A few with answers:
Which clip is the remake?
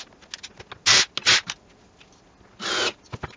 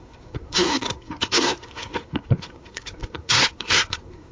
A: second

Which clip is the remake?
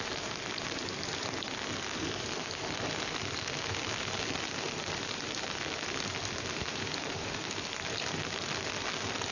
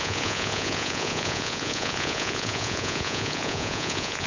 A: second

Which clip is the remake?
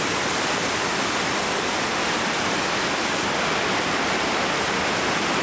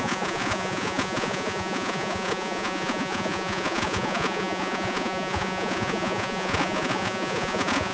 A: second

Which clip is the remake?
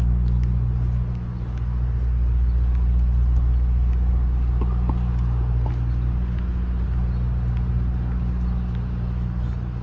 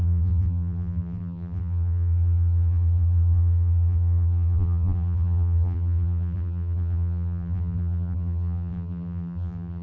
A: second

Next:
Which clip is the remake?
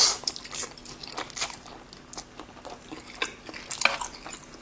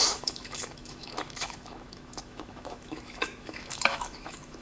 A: second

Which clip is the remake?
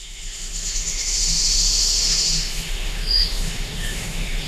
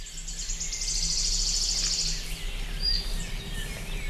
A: first